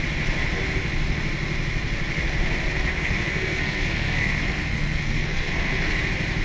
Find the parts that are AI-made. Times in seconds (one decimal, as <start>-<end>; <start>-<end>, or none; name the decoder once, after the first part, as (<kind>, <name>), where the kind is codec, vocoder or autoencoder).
2.9-5.9 (codec, SNAC)

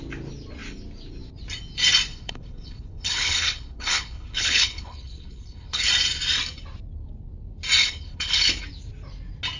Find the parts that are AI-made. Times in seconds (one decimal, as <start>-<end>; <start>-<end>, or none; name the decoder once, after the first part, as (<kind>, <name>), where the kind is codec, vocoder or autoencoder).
2.1-5.9 (codec, HILCodec); 7.8-8.5

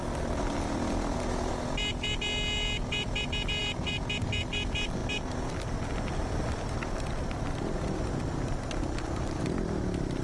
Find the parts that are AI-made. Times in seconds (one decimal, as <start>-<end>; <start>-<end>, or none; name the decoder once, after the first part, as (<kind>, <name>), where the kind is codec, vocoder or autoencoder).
3.6-4.2 (vocoder, BigVGAN v2); 5.0-7.3

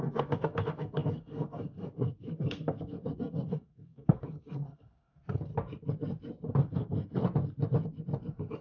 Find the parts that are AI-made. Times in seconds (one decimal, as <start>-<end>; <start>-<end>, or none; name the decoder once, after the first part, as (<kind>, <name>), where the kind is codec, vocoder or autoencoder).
0.0-5.5 (codec, SNAC); 6.6-7.2

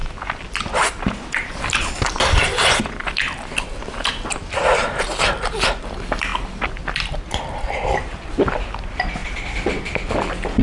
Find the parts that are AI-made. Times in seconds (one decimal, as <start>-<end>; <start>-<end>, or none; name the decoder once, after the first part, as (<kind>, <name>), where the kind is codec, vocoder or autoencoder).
0.0-6.3 (vocoder, BigVGAN v2); 7.4-10.6

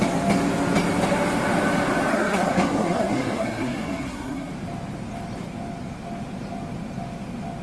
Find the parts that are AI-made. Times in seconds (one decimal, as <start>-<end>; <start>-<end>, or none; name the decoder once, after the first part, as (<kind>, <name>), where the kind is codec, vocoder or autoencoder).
2.1-4.5 (codec, SNAC)

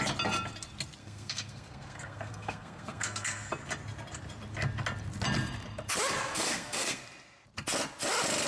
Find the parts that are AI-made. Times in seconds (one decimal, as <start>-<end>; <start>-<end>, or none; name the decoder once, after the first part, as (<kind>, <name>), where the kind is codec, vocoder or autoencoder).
1.0-3.5 (codec, SNAC); 6.3-7.0

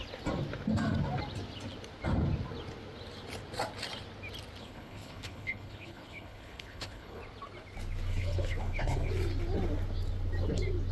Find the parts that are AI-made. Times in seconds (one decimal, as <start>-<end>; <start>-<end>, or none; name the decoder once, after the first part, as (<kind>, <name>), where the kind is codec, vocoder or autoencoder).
4.6-7.2 (codec, HILCodec); 8.1-9.1